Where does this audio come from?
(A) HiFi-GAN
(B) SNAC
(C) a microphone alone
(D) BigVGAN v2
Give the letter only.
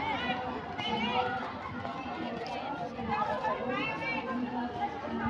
C